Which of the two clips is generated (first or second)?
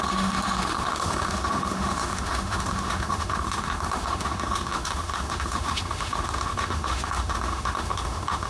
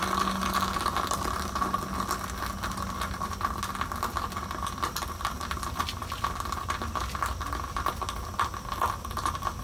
first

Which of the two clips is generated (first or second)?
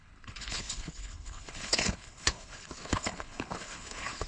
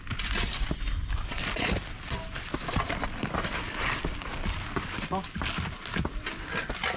first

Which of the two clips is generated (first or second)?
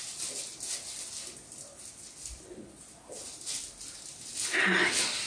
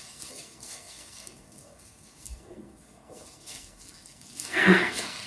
second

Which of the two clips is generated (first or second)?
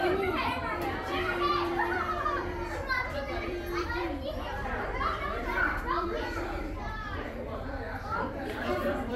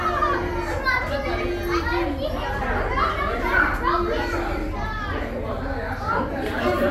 first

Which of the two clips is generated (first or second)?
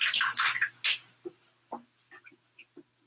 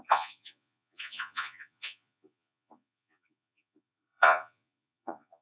second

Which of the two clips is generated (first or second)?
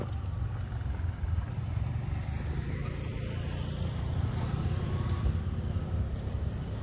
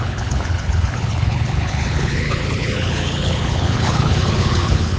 second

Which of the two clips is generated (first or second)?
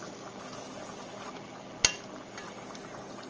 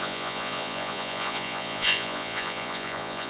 second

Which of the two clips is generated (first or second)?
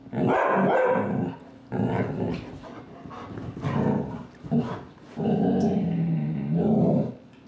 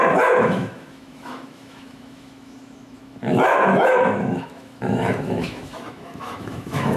second